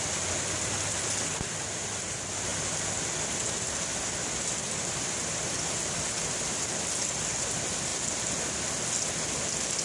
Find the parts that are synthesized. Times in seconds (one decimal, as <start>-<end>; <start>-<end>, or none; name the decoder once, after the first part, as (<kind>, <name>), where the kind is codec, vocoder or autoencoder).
none